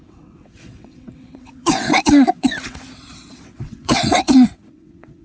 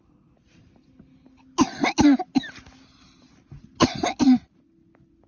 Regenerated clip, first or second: first